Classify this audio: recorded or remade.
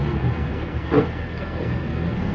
remade